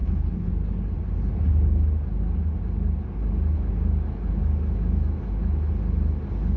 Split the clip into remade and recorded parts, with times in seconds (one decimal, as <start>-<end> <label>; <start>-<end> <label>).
0.0-0.5 remade; 0.5-6.6 recorded